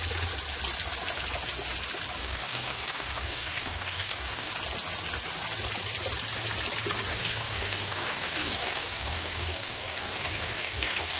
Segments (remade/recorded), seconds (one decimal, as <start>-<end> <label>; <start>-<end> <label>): 0.0-2.2 recorded; 2.2-4.5 remade; 4.5-7.1 recorded; 7.1-11.2 remade